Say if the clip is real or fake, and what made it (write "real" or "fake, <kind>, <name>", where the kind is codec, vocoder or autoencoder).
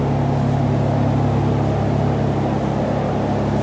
real